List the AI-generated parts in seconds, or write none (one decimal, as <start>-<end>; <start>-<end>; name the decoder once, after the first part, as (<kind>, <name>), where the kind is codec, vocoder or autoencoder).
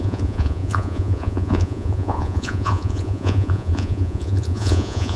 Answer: 0.0-5.2 (vocoder, Vocos)